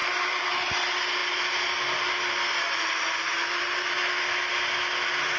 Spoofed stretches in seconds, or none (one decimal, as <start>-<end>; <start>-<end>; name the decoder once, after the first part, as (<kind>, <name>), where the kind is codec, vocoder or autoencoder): 0.0-0.7 (vocoder, BigVGAN v2)